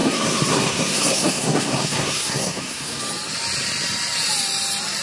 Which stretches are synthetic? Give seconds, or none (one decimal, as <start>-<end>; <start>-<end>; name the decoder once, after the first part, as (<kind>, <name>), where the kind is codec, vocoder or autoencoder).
0.0-3.0 (codec, SNAC)